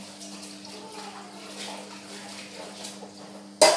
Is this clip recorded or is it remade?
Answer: recorded